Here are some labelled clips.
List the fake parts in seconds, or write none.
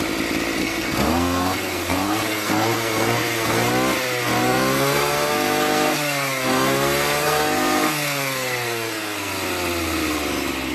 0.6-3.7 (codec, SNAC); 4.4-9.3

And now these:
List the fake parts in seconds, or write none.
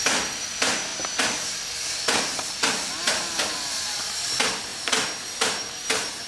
none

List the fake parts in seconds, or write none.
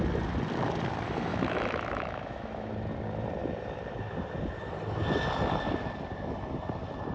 1.3-2.7 (autoencoder, DAC-VAE)